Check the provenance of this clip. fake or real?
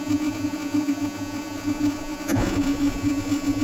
fake